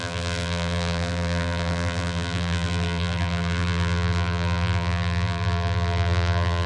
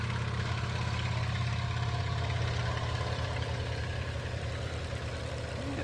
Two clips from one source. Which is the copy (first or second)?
first